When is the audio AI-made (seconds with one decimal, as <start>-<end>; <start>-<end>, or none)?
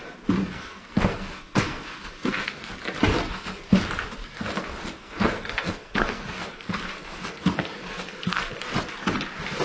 0.4-2.7; 3.2-3.8; 4.2-8.5